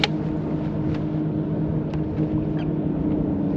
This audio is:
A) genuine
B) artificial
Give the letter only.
A